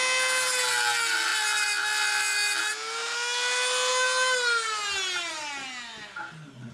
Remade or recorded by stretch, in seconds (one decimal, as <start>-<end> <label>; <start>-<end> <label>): 0.0-6.7 recorded